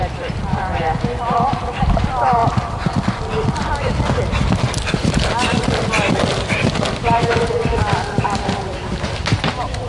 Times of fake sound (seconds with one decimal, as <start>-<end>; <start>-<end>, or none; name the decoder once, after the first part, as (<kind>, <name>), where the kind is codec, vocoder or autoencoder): none